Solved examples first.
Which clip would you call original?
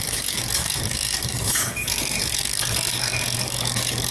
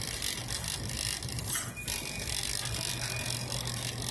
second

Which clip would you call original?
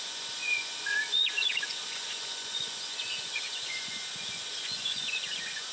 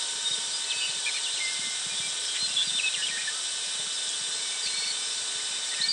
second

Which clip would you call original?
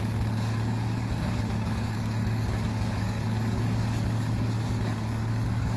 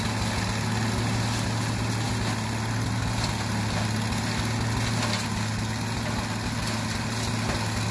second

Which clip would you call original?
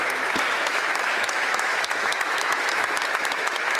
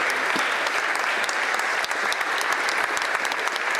second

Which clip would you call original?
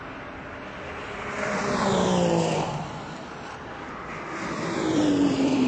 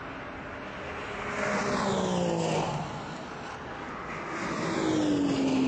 second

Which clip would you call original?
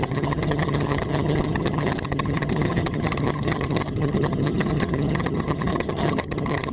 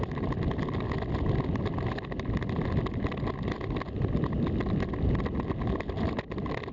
second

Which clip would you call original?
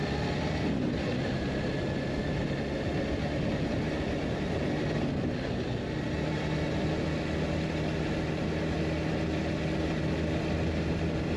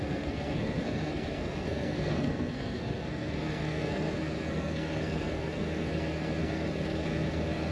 first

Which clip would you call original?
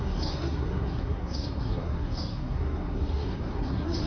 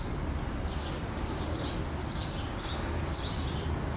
second